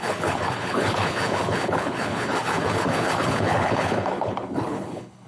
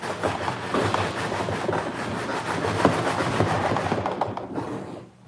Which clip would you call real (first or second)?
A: second